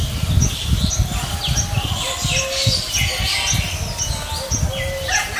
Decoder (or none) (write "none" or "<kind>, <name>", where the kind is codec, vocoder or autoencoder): none